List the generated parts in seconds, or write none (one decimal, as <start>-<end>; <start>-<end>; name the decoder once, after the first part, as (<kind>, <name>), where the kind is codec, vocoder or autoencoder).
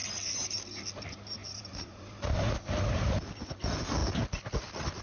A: 1.4-3.4 (vocoder, BigVGAN v2)